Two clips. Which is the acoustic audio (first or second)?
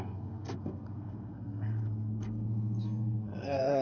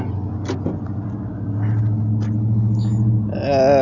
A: second